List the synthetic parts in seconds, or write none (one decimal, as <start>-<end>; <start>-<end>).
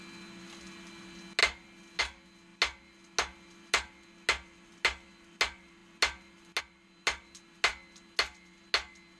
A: none